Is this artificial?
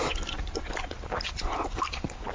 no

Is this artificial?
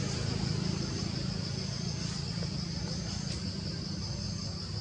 no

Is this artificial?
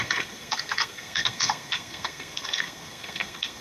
yes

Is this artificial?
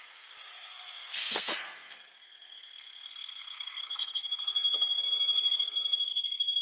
yes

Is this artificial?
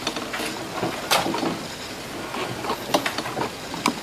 no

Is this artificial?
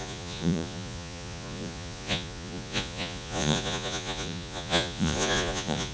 yes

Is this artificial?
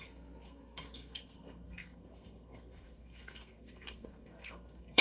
yes